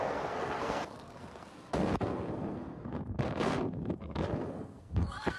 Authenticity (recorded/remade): remade